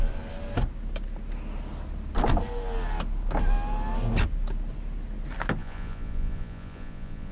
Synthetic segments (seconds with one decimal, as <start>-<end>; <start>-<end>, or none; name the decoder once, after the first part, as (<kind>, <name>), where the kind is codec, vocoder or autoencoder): 5.6-7.3 (vocoder, Vocos)